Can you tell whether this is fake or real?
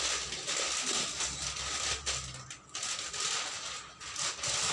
real